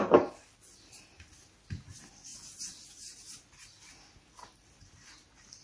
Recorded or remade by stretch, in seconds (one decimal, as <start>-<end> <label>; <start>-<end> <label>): 0.0-5.6 recorded